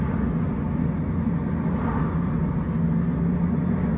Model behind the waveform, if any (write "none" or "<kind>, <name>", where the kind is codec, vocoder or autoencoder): none